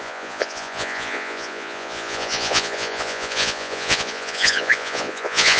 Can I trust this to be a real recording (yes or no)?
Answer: no